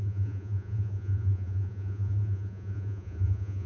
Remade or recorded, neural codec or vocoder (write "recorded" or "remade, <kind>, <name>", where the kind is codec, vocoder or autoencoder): remade, vocoder, Vocos